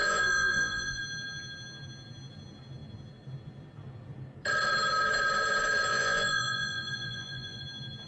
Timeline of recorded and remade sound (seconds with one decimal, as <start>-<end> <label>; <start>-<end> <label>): 0.0-1.0 remade; 1.0-5.9 recorded; 5.9-7.6 remade; 7.6-8.1 recorded